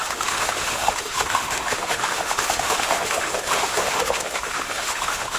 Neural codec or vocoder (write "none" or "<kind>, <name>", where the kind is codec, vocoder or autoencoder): autoencoder, DAC-VAE